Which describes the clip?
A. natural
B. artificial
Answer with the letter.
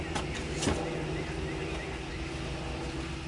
A